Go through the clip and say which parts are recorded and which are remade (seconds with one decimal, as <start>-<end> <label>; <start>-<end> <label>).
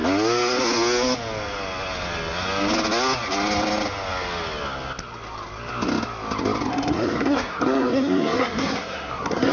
0.0-6.7 recorded; 6.7-9.5 remade